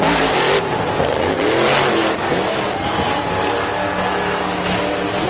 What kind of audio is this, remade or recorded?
recorded